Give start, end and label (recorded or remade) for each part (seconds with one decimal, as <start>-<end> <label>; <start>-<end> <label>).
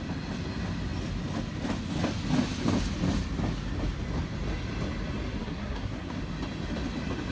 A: 0.0-5.4 recorded; 5.4-6.2 remade; 6.2-7.3 recorded